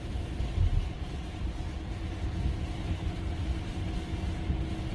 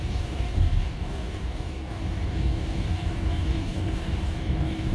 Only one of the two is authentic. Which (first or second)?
first